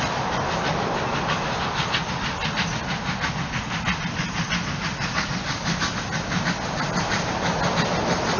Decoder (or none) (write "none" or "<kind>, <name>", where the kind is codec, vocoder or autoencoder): none